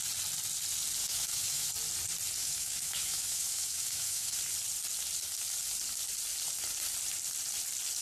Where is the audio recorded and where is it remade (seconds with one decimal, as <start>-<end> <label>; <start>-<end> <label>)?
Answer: 0.0-1.0 recorded; 1.0-1.7 remade; 1.7-2.4 recorded; 2.4-4.4 remade; 4.4-8.0 recorded